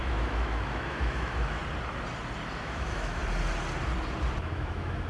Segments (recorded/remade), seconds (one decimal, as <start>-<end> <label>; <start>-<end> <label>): 0.0-1.6 remade; 1.6-2.6 recorded; 2.6-3.2 remade; 3.2-4.4 recorded; 4.4-5.1 remade